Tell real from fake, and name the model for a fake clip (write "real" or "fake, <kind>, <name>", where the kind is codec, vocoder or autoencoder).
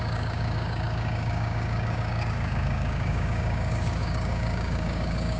fake, codec, DAC